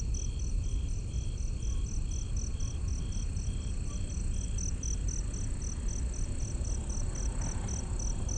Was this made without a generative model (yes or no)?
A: yes